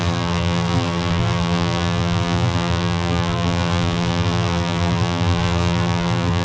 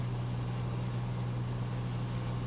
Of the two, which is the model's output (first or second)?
first